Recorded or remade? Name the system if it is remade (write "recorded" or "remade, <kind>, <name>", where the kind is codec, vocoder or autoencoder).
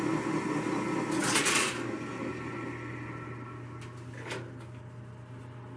recorded